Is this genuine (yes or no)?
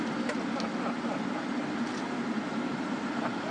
yes